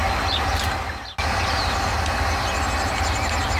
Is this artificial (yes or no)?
no